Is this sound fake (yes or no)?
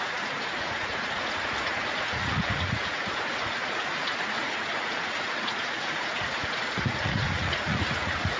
yes